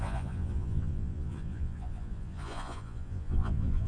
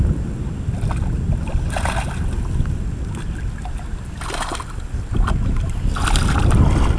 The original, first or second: second